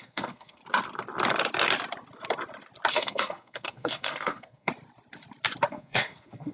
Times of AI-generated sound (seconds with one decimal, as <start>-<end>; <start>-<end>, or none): 0.0-0.6; 2.9-4.7; 5.7-6.5